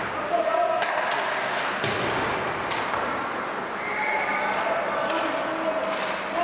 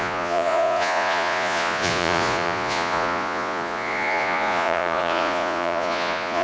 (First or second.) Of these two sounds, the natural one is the first